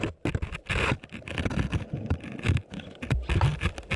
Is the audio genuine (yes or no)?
yes